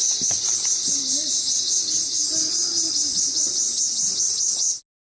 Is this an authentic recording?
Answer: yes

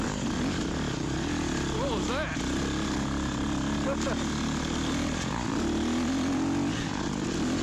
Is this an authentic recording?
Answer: yes